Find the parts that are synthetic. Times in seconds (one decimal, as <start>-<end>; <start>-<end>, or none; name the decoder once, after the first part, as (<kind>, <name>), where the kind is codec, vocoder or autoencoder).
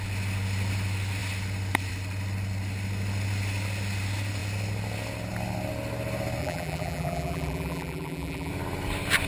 6.4-8.5 (vocoder, BigVGAN v2)